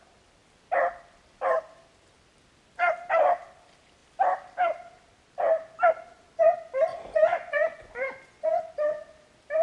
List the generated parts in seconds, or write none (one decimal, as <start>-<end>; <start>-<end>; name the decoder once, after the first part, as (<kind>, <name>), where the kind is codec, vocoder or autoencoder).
6.9-8.6 (vocoder, Vocos)